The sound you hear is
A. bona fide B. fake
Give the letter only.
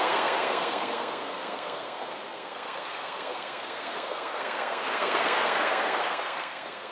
B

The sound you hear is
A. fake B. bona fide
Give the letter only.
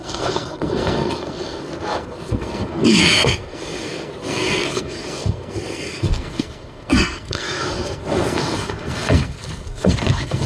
A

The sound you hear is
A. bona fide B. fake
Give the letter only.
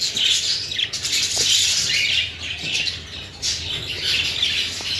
A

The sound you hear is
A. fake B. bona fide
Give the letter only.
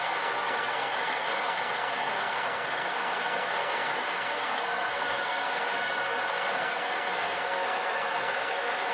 A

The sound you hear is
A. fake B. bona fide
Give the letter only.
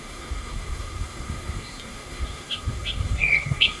A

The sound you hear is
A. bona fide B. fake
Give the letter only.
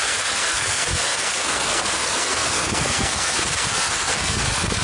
B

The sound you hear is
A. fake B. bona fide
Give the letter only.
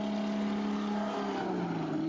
B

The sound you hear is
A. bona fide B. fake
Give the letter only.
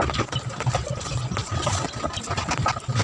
A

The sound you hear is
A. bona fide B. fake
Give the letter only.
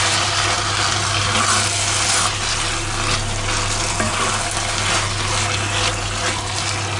A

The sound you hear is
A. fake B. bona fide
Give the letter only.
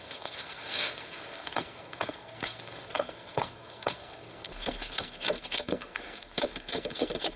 A